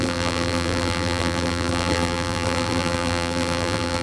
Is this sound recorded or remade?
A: remade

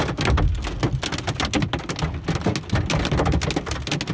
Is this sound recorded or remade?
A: recorded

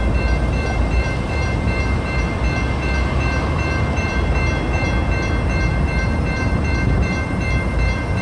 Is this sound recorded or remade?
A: remade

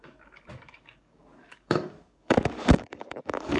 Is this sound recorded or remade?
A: remade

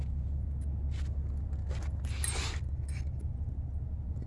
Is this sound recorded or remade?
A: recorded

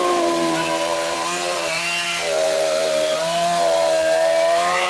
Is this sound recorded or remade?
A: remade